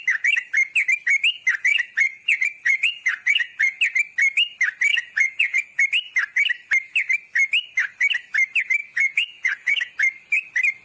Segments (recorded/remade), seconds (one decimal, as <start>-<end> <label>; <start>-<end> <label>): 0.0-1.7 recorded; 1.7-3.8 remade; 3.8-4.9 recorded; 4.9-5.8 remade; 5.8-8.8 recorded; 8.8-9.9 remade; 9.9-10.8 recorded